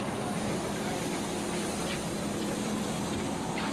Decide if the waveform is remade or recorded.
recorded